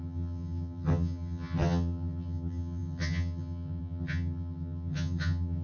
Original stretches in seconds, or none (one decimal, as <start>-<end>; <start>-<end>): none